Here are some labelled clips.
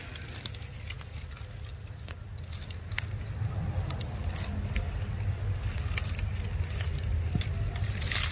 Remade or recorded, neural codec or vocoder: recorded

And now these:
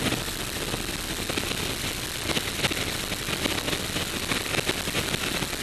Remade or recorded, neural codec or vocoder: recorded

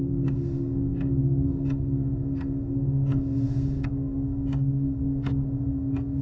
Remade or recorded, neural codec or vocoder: remade, codec, SNAC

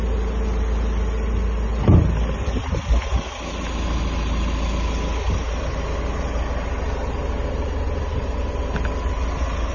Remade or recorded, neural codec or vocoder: recorded